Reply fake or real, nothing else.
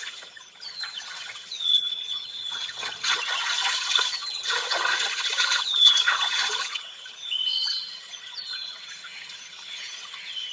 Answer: fake